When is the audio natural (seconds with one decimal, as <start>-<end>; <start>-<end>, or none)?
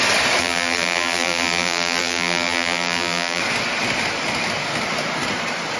0.0-0.4; 3.4-5.8